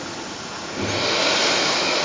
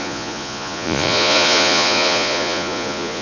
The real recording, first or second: first